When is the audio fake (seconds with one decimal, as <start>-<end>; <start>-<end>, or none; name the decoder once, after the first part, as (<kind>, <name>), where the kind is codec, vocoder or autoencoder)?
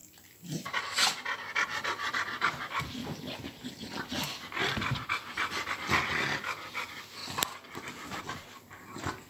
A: none